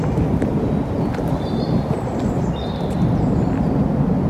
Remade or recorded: recorded